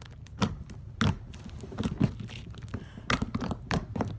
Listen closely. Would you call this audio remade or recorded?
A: recorded